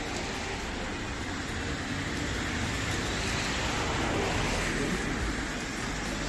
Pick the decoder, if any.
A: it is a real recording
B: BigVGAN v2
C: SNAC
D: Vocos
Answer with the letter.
A